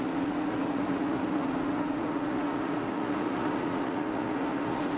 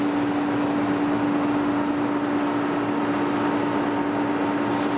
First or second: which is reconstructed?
first